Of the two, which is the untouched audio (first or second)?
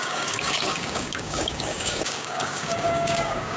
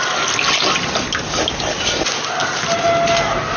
second